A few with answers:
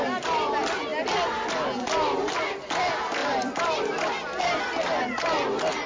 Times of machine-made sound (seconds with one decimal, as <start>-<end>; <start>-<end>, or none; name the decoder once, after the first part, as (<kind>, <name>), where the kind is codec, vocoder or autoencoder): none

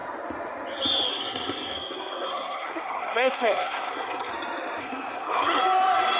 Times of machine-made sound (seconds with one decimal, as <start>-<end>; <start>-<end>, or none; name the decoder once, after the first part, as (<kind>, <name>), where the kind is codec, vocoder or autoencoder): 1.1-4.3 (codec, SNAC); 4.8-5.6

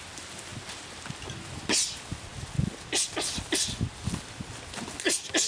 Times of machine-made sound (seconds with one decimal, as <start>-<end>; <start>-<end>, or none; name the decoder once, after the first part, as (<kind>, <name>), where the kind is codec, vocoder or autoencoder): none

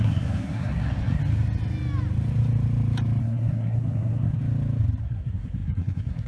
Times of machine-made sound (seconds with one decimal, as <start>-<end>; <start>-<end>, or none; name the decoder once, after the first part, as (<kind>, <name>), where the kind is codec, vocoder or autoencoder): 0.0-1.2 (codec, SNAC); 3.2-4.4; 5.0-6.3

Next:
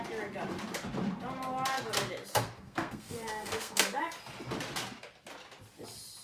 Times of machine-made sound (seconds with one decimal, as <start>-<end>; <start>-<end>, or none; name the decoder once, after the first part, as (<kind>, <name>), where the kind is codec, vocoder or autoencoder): 2.3-4.0 (codec, SNAC)